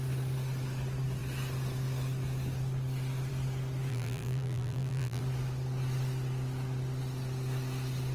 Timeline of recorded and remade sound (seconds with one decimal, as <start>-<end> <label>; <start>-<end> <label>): 0.0-3.9 recorded; 3.9-5.2 remade; 5.2-8.1 recorded